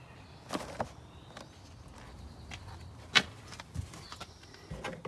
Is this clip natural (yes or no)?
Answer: yes